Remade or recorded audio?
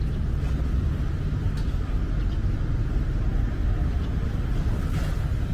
recorded